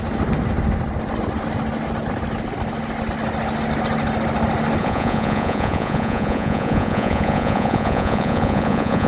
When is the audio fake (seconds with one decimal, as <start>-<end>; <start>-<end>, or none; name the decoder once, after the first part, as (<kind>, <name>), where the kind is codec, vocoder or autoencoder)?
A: 4.8-9.1 (vocoder, Vocos)

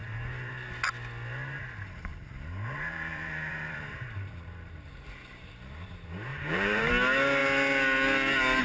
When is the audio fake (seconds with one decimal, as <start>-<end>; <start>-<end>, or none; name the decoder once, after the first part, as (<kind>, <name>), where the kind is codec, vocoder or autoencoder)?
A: 0.0-0.5 (vocoder, BigVGAN v2); 2.1-5.5; 6.3-6.9

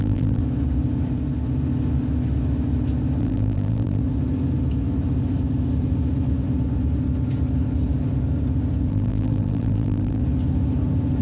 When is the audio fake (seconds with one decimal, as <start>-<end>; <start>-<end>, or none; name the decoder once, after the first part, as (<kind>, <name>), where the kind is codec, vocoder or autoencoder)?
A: 0.0-0.4 (vocoder, BigVGAN v2); 3.2-4.0; 8.9-10.2

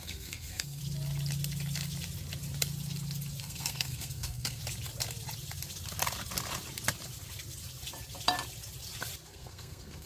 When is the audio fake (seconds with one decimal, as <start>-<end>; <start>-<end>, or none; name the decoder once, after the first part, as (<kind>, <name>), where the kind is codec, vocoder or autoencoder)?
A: 0.0-0.8 (codec, SNAC); 3.4-4.6; 9.3-10.1

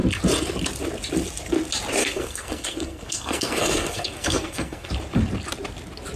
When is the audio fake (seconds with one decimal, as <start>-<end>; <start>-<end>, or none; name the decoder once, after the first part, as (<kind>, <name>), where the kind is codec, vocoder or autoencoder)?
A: 2.0-4.9 (codec, SNAC)

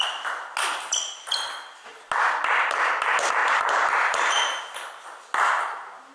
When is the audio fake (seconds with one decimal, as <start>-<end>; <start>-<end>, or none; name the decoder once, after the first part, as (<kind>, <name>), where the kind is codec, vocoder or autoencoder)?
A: 3.4-4.6 (vocoder, BigVGAN v2)

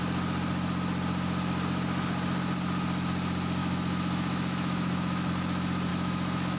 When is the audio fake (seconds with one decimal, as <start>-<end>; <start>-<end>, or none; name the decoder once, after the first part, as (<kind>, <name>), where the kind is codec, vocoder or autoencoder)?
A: 3.6-5.3 (autoencoder, DAC-VAE); 5.9-6.6

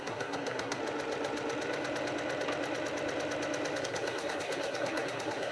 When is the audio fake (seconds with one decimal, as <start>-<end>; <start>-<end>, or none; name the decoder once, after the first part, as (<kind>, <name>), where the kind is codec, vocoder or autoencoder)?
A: 0.0-0.8 (codec, SNAC); 3.8-5.5